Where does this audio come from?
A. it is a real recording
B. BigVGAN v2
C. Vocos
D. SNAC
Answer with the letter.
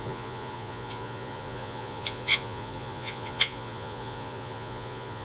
C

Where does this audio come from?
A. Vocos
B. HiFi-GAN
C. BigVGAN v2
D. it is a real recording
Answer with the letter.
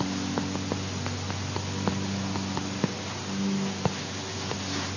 D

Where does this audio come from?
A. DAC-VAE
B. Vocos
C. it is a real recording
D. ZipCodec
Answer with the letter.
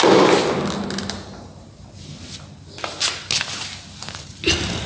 C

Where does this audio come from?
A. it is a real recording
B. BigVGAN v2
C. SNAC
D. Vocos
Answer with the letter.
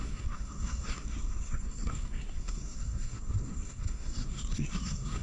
C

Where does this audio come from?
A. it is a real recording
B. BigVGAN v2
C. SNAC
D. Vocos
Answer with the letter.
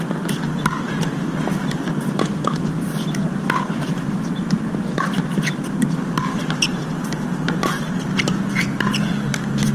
A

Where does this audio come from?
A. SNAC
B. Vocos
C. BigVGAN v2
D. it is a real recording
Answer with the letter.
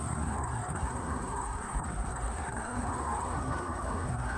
A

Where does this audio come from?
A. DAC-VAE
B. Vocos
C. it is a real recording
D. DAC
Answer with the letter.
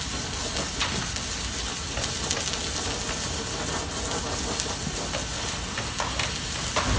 C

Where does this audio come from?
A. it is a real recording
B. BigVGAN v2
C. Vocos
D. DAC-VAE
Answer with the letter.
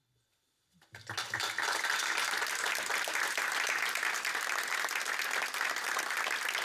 A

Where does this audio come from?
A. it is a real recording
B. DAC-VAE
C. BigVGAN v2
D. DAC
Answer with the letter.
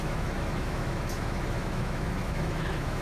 B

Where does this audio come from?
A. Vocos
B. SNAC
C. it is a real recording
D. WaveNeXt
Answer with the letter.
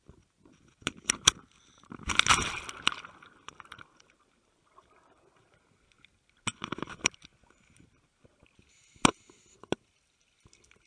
C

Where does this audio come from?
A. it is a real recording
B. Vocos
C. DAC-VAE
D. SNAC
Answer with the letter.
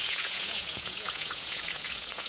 B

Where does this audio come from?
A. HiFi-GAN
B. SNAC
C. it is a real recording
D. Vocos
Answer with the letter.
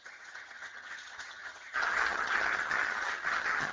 A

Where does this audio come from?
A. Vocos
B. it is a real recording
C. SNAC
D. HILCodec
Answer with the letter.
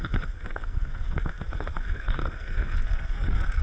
C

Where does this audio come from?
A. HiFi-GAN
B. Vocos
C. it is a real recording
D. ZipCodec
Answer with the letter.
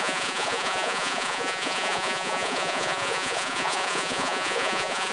B